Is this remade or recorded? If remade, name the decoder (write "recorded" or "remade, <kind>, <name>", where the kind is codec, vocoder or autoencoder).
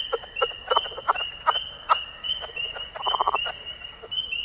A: remade, vocoder, BigVGAN v2